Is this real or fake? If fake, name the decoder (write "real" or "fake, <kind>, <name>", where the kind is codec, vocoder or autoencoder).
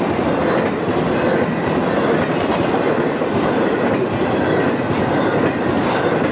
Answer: real